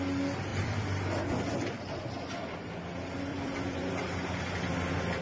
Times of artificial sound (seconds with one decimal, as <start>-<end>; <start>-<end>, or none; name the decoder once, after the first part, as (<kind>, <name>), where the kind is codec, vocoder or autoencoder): 0.5-2.7 (vocoder, BigVGAN v2); 3.3-3.9